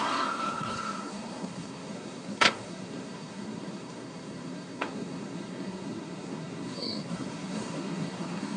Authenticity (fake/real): fake